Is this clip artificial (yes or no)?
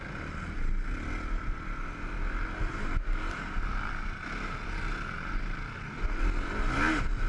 no